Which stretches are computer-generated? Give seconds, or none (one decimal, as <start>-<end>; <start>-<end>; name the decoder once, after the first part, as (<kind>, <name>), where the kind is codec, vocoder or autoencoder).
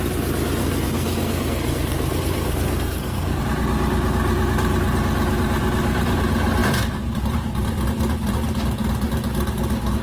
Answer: 0.6-3.4 (codec, SNAC)